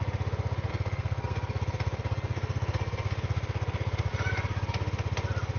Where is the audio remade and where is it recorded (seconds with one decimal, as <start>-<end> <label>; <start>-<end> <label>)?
0.0-0.7 recorded; 0.7-4.1 remade; 4.1-5.6 recorded